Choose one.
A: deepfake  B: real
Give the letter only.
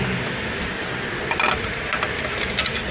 B